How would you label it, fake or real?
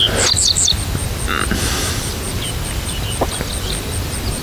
real